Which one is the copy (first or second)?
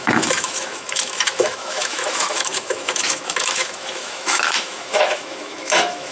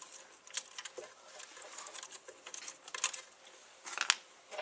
first